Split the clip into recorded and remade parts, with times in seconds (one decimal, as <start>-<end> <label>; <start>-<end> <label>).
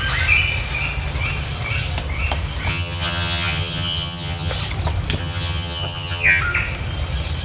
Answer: 0.0-2.7 recorded; 2.7-4.5 remade; 4.5-5.2 recorded; 5.2-6.4 remade; 6.4-7.4 recorded